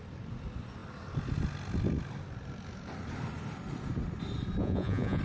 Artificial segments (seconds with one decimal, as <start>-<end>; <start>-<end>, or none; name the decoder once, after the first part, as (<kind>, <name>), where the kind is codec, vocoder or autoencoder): 4.6-5.2 (vocoder, Vocos)